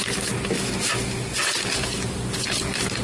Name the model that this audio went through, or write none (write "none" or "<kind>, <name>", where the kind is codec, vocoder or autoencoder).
none